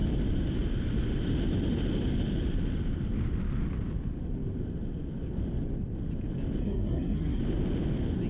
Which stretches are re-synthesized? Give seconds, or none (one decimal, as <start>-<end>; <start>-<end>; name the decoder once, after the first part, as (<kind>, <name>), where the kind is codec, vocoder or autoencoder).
6.6-7.4 (codec, SNAC)